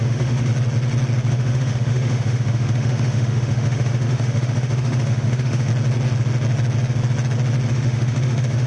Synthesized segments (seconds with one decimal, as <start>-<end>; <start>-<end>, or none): 0.0-0.5; 1.3-5.7; 7.7-8.7